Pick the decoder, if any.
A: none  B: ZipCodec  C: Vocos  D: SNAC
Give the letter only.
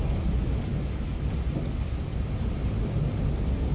A